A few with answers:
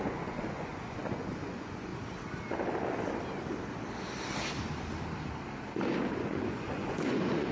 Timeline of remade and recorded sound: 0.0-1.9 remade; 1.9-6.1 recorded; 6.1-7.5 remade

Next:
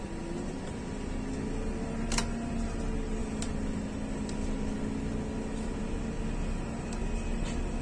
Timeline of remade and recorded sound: 0.0-7.8 recorded